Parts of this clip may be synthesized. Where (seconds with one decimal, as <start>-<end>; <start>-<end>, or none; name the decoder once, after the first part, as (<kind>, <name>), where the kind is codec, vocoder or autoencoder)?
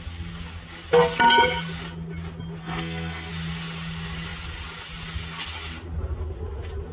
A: 2.6-3.3 (codec, SNAC)